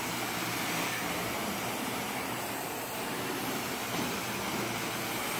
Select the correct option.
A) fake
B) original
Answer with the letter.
A